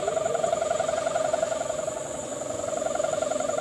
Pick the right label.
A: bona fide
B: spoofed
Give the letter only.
B